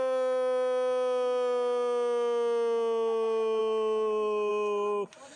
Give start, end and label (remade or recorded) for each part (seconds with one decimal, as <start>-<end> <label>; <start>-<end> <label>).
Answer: 0.0-5.4 recorded